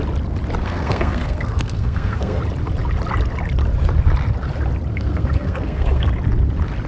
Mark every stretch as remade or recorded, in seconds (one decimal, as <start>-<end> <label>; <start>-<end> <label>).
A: 0.0-0.6 recorded; 0.6-2.4 remade; 2.4-4.9 recorded; 4.9-6.1 remade; 6.1-6.9 recorded